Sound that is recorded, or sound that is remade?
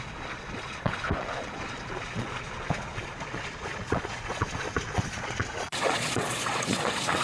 remade